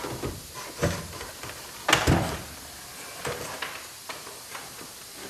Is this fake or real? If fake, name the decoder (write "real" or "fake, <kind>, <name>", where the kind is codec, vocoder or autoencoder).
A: real